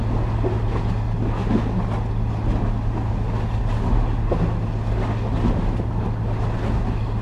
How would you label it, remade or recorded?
recorded